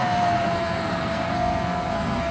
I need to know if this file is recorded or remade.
remade